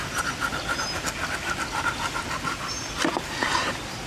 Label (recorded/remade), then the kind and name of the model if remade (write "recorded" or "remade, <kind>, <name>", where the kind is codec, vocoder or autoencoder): recorded